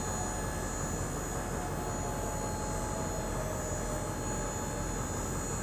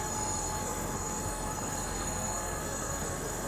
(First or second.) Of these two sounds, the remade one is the second